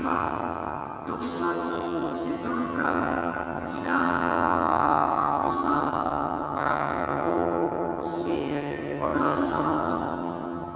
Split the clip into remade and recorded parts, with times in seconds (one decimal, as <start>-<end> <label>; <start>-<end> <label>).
0.0-10.8 remade